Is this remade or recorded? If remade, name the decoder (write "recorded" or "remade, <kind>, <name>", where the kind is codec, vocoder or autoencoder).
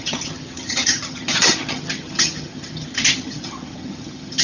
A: remade, vocoder, HiFi-GAN